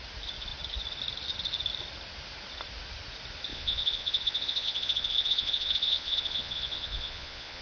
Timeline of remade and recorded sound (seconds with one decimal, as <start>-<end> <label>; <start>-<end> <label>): 0.0-3.5 recorded; 3.5-7.6 remade